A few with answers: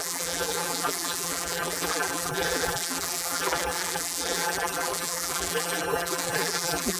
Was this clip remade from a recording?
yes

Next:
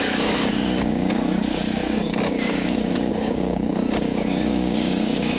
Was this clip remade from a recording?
yes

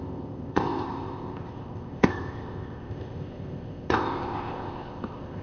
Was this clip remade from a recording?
yes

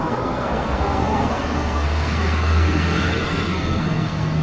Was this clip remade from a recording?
yes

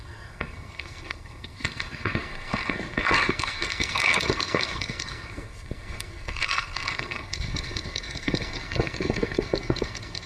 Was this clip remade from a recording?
yes